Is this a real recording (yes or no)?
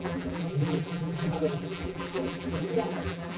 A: no